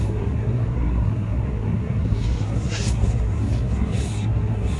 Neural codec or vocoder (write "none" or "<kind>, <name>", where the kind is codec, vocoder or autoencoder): codec, SNAC